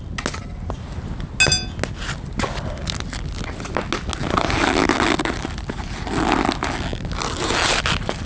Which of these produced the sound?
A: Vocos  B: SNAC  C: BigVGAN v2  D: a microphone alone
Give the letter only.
D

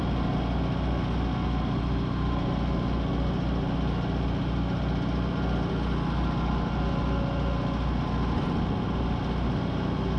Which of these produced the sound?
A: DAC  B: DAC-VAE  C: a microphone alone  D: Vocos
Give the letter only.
C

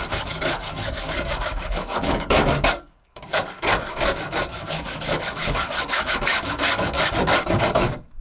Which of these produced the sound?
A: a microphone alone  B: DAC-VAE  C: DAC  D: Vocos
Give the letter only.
C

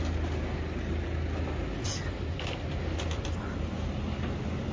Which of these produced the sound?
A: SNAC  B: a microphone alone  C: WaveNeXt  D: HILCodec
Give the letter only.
B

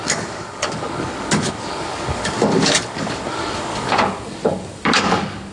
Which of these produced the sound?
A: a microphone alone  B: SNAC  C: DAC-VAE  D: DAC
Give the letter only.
D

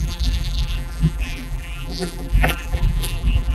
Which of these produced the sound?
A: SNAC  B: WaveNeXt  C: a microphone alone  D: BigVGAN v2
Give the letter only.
D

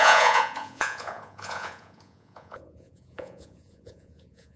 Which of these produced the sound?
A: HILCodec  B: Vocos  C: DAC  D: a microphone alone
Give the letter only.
B